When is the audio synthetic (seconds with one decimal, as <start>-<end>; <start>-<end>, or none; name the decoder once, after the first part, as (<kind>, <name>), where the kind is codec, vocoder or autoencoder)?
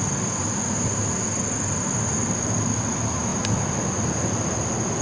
none